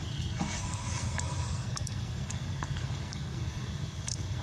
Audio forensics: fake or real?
fake